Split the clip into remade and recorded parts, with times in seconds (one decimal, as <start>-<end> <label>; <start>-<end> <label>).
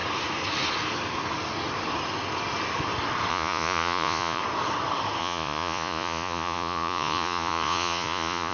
0.0-3.3 recorded; 3.3-4.4 remade; 4.4-5.2 recorded; 5.2-8.5 remade